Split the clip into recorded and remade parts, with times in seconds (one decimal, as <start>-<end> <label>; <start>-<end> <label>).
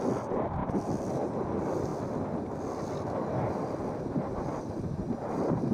0.0-5.7 recorded